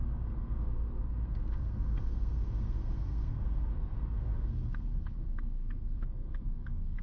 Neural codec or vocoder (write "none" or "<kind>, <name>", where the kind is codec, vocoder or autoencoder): codec, SNAC